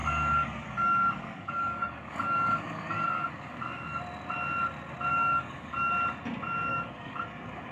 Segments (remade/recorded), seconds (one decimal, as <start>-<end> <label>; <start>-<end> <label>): 0.0-4.0 remade; 4.0-5.1 recorded; 5.1-5.9 remade; 5.9-6.7 recorded; 6.7-7.7 remade